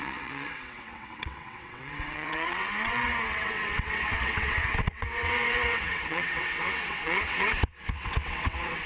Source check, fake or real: fake